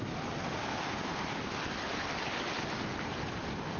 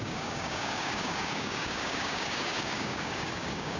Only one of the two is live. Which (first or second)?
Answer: first